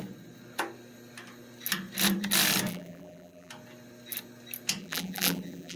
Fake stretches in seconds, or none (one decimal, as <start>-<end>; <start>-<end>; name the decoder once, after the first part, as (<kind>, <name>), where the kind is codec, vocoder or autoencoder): 2.7-3.5 (vocoder, BigVGAN v2); 4.8-5.8